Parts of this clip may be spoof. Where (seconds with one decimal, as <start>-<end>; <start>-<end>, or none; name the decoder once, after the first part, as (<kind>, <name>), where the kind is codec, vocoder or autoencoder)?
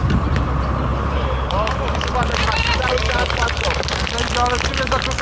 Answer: 0.9-4.0 (vocoder, BigVGAN v2)